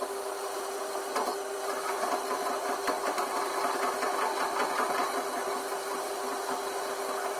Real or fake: real